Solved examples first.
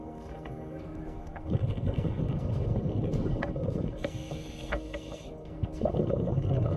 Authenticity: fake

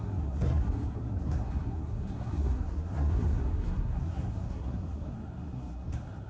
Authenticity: fake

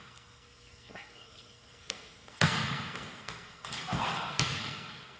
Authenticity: fake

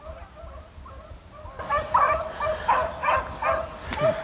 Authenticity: real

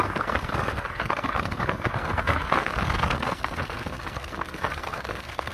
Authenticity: fake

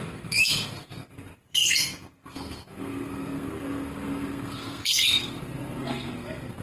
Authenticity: fake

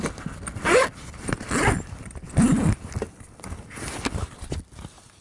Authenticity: real